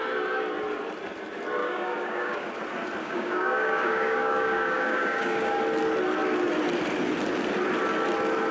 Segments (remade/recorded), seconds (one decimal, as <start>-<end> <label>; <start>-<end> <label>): 0.0-1.6 recorded; 1.6-2.5 remade; 2.5-3.0 recorded; 3.0-5.6 remade; 5.6-8.5 recorded